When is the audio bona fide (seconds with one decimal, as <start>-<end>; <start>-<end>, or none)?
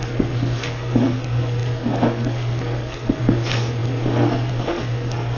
none